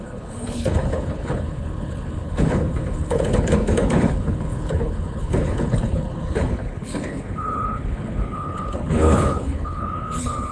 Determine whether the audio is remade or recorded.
remade